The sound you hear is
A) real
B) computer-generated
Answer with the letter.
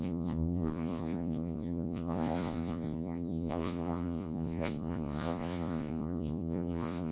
B